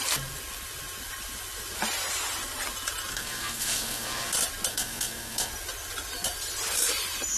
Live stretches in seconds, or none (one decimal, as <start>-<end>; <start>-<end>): 0.0-3.1; 4.3-4.7; 5.5-7.4